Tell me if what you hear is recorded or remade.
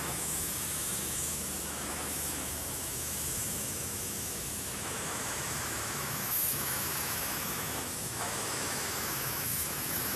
remade